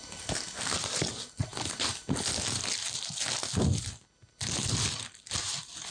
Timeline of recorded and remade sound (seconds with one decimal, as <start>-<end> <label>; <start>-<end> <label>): 0.0-5.9 recorded